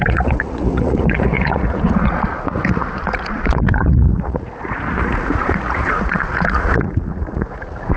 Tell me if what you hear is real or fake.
fake